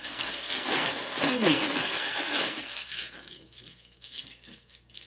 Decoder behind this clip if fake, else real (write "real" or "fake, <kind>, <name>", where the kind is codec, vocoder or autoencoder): fake, codec, SNAC